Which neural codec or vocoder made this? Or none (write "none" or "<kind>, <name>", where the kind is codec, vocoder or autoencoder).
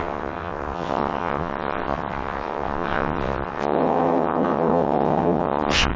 vocoder, WaveNeXt